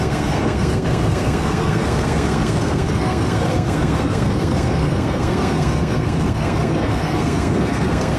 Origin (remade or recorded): remade